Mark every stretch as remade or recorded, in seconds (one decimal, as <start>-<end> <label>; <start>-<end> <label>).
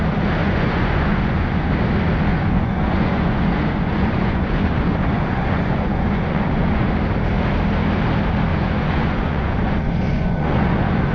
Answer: 0.0-0.4 recorded; 0.4-1.7 remade; 1.7-2.3 recorded; 2.3-6.9 remade; 6.9-8.5 recorded; 8.5-11.1 remade